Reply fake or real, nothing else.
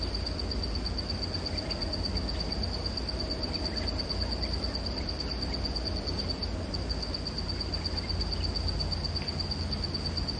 real